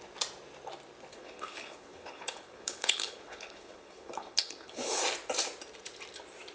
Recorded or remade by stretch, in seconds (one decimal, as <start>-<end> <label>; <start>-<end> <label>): 0.0-1.1 recorded; 1.1-5.0 remade; 5.0-6.5 recorded